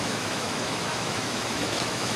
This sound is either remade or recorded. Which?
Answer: remade